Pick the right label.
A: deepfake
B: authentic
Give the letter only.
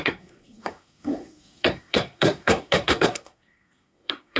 A